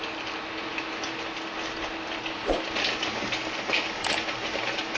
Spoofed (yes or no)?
no